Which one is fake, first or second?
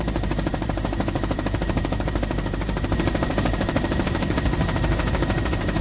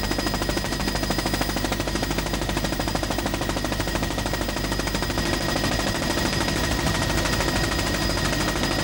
first